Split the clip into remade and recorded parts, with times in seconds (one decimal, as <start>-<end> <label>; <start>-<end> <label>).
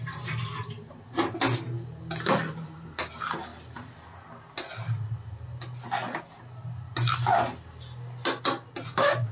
0.0-9.3 recorded